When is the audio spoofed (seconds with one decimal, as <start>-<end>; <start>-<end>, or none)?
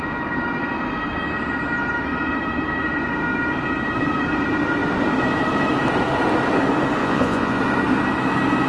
7.0-7.6